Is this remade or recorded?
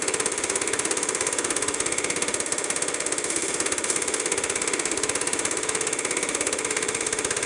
remade